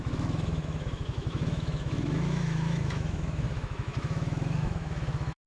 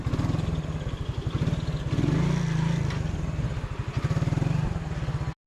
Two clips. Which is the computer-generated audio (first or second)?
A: first